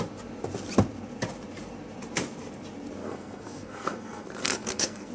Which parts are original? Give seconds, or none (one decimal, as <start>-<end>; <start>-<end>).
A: 0.0-3.0